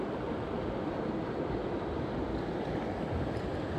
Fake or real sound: real